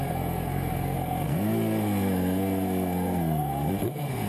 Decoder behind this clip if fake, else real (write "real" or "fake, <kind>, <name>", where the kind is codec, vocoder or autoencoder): fake, codec, SNAC